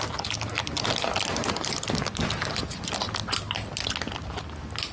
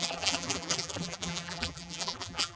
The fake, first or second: second